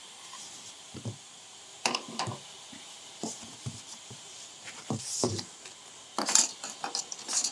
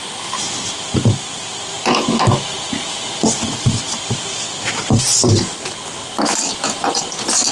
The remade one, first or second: first